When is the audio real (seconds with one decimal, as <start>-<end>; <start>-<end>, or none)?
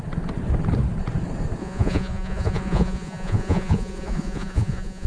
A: 0.0-1.6